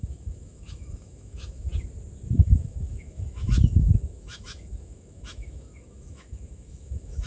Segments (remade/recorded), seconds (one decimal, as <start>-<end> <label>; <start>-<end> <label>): 0.0-1.7 remade; 1.7-2.3 recorded; 2.3-7.3 remade